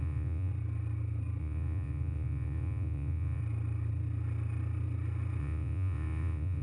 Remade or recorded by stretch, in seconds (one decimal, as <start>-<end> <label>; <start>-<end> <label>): 0.0-0.5 remade; 0.5-1.4 recorded; 1.4-3.4 remade; 3.4-5.4 recorded; 5.4-6.6 remade